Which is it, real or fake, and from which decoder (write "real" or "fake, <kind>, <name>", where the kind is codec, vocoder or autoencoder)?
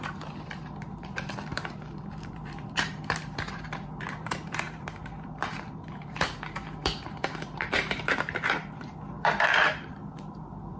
fake, vocoder, BigVGAN v2